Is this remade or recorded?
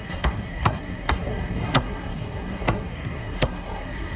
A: remade